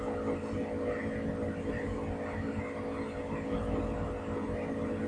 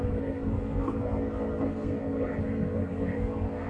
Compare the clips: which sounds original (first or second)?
first